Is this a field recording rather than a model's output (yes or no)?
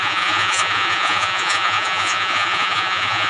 no